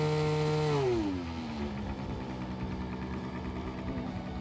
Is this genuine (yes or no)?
yes